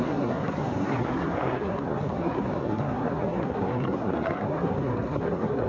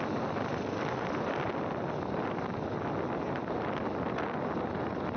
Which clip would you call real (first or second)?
second